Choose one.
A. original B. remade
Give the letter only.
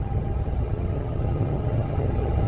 B